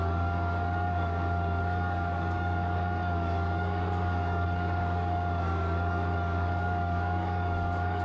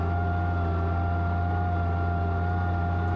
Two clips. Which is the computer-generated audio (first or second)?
first